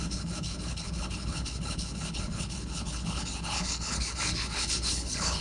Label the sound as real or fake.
fake